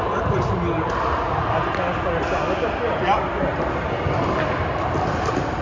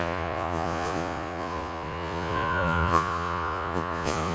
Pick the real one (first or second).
first